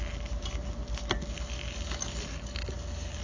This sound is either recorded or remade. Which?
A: recorded